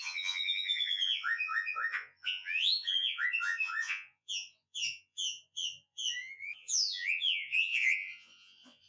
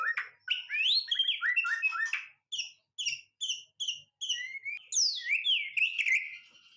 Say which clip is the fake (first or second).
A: first